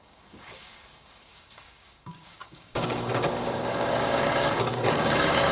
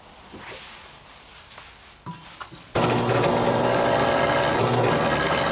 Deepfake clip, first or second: first